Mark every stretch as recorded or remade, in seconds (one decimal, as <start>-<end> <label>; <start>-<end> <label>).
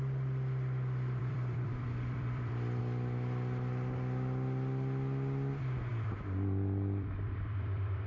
0.0-1.2 recorded; 1.2-2.8 remade; 2.8-5.9 recorded; 5.9-8.1 remade